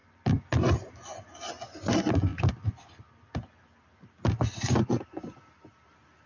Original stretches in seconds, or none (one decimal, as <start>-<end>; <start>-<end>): 0.0-6.3